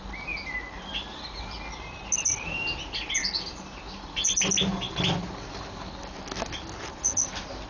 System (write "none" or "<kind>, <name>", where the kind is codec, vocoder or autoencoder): none